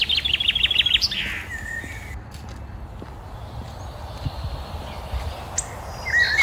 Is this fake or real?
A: real